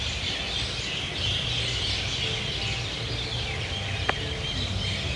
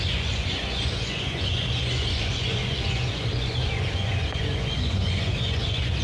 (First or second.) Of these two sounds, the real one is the first